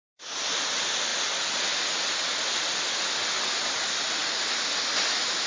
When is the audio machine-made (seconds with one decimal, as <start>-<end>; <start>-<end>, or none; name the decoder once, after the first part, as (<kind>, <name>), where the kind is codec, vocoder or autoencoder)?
none